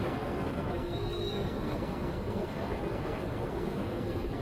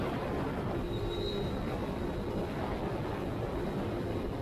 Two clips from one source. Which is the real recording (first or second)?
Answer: second